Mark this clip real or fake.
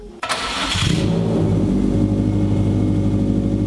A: real